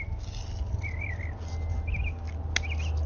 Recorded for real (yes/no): yes